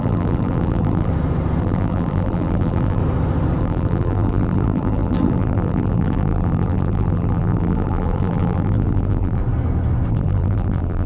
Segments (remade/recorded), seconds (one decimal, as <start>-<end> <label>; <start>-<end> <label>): 0.0-1.1 remade; 1.1-1.6 recorded; 1.6-3.0 remade; 3.0-3.6 recorded; 3.6-9.4 remade; 9.4-10.1 recorded; 10.1-11.1 remade